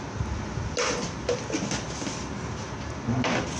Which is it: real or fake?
real